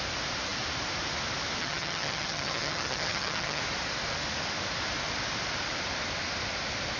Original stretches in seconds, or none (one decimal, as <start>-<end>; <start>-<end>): 0.0-1.6; 3.6-7.0